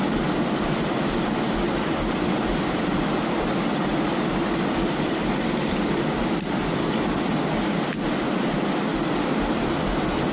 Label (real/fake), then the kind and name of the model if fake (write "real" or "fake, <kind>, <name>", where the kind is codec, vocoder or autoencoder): real